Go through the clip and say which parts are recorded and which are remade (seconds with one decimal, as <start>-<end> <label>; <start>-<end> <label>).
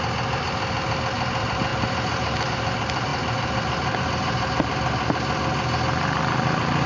0.0-6.9 recorded